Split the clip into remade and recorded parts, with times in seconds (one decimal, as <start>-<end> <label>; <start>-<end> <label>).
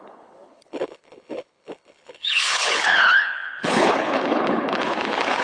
0.0-5.4 remade